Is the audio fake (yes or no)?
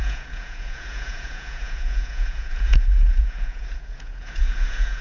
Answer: yes